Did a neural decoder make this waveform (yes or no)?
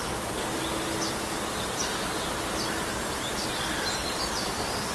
no